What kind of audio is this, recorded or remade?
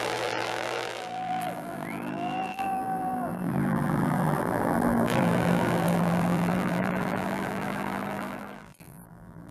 remade